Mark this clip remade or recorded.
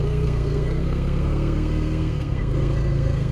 remade